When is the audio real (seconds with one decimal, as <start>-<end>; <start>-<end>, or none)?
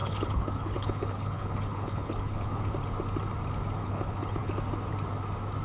2.7-3.8; 4.5-5.6